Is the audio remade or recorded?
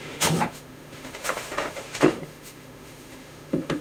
remade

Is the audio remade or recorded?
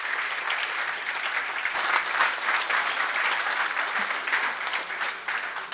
recorded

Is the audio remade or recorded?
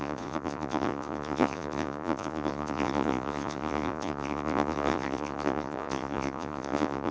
remade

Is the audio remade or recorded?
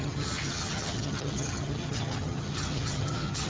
remade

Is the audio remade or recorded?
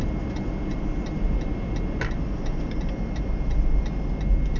recorded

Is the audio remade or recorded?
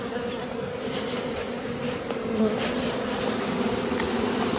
recorded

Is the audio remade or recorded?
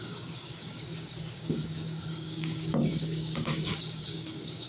remade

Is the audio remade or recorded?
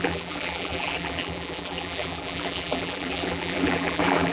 remade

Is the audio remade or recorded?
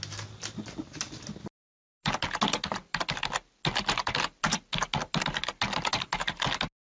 recorded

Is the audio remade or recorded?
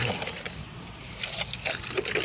recorded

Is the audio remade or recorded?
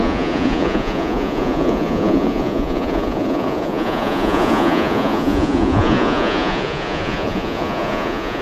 remade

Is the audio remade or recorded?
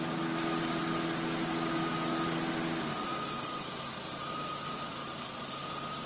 recorded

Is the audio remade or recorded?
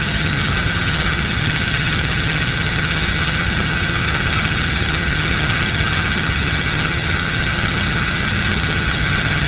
remade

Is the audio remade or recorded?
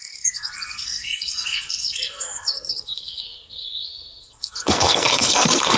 remade